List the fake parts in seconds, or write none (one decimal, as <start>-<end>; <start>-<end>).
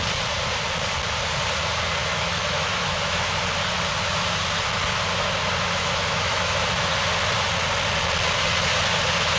2.0-3.4; 5.8-6.9